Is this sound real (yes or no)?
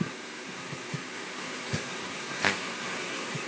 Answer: no